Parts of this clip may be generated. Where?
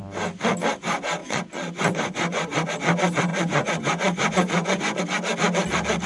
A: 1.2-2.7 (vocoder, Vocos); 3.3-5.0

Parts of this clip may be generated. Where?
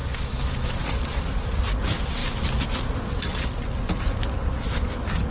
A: 0.0-0.8 (autoencoder, DAC-VAE)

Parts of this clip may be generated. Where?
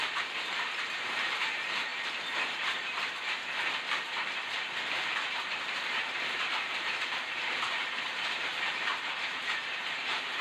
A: 0.0-1.9 (vocoder, BigVGAN v2); 5.6-10.4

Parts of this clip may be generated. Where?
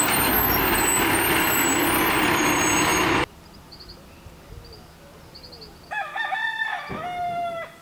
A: none